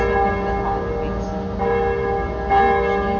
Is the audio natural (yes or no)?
yes